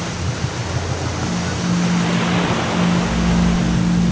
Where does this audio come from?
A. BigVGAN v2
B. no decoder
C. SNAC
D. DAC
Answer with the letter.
B